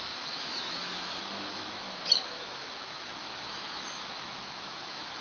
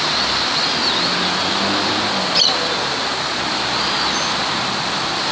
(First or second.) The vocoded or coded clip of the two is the first